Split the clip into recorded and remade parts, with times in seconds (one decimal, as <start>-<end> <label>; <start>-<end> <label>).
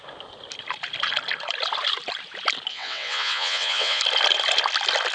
0.0-2.7 recorded; 2.7-4.0 remade; 4.0-5.1 recorded